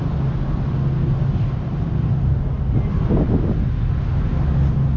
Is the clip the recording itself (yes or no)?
yes